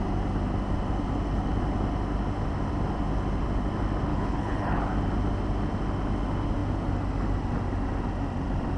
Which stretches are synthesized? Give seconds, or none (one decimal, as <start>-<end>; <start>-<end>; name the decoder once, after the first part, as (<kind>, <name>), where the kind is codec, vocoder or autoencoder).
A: 4.1-4.8 (codec, HILCodec)